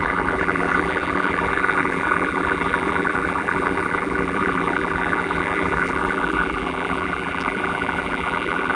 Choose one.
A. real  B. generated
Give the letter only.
B